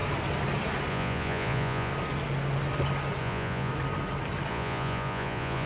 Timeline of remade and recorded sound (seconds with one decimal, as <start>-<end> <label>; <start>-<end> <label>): 0.0-0.9 recorded; 0.9-1.9 remade; 1.9-3.2 recorded; 3.2-3.7 remade; 3.7-4.5 recorded; 4.5-5.7 remade